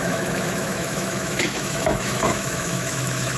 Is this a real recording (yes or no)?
no